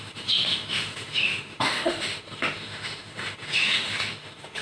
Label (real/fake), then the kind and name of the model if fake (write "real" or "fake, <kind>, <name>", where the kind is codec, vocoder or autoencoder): fake, autoencoder, DAC-VAE